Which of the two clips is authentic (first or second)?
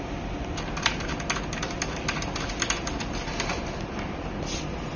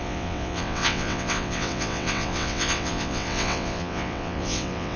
first